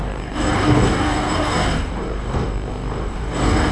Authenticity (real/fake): fake